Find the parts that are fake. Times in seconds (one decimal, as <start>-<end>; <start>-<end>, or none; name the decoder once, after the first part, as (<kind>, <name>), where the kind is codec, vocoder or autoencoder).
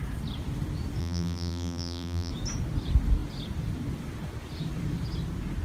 1.0-2.3 (vocoder, BigVGAN v2)